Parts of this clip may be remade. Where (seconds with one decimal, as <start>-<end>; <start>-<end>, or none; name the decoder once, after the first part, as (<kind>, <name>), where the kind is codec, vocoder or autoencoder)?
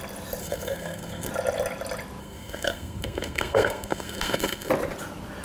0.4-1.3 (codec, SNAC); 2.2-4.7